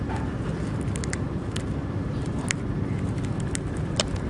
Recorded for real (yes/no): no